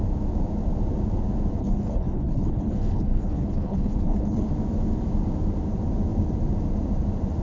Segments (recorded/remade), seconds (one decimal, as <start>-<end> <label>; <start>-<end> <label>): 0.0-1.6 recorded; 1.6-4.5 remade; 4.5-7.4 recorded